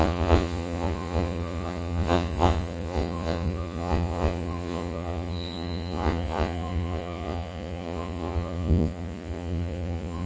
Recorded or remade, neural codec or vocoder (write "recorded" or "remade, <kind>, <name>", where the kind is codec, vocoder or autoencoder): remade, vocoder, Vocos